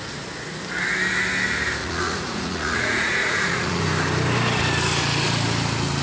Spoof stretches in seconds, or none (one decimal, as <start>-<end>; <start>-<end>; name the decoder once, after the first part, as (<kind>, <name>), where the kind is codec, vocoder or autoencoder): 1.8-3.8 (vocoder, Vocos)